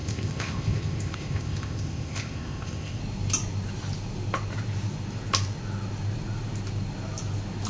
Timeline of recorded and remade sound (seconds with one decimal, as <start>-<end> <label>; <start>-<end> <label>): 0.0-3.0 remade; 3.0-7.7 recorded